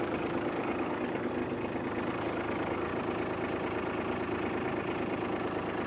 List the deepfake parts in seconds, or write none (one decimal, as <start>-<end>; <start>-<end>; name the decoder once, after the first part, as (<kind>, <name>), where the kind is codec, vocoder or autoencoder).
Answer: 0.0-1.4 (codec, DAC); 2.2-2.9